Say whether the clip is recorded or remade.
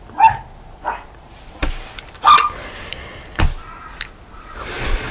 recorded